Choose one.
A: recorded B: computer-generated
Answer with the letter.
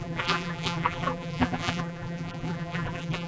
B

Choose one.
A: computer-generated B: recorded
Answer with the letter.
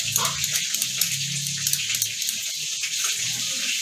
B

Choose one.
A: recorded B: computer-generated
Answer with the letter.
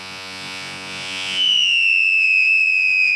B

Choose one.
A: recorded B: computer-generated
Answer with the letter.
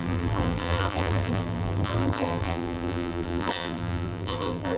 B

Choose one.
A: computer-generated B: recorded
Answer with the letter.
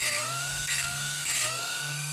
A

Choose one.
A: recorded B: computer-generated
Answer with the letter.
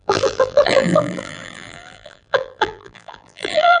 B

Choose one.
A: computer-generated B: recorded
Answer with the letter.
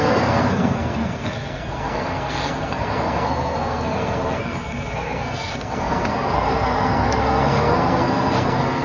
A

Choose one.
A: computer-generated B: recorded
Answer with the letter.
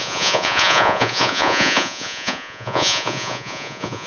A